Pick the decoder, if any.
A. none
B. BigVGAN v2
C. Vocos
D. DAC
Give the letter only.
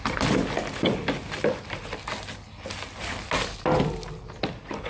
A